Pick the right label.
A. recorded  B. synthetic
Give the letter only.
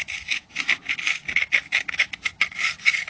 A